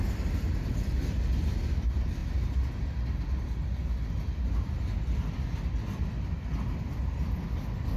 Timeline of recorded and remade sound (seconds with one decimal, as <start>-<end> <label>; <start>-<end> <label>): 0.0-8.0 recorded